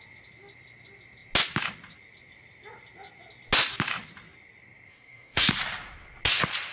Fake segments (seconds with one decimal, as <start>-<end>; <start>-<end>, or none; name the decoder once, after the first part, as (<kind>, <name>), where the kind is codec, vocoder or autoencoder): 4.9-5.5 (codec, DAC)